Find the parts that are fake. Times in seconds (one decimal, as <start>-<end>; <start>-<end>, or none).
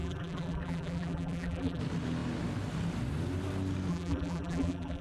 0.0-1.8; 3.9-5.0